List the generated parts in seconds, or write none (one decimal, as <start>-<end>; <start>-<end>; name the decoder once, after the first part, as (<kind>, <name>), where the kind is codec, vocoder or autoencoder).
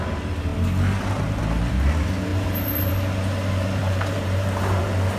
2.3-2.9 (vocoder, BigVGAN v2); 3.8-4.8